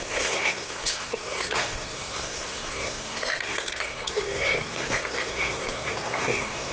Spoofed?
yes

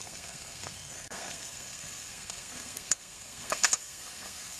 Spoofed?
yes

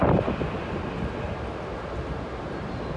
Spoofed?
no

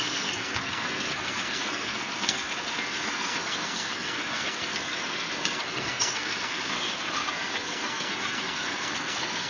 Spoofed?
yes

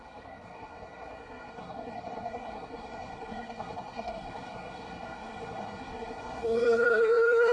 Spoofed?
yes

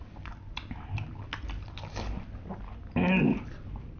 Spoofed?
no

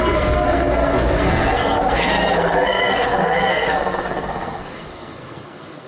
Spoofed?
yes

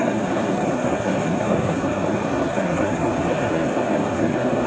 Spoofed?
yes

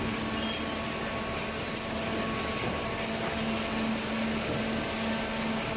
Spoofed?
no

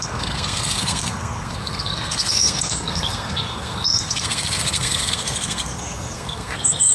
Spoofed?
yes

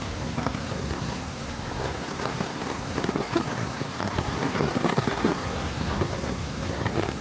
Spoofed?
yes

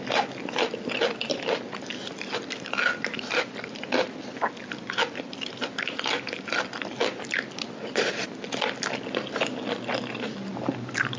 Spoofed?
no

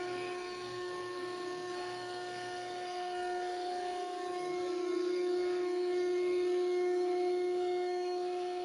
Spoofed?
yes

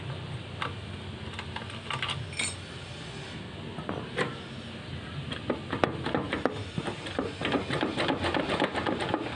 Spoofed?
no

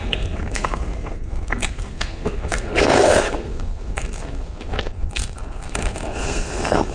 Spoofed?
yes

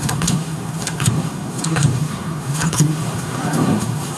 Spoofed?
yes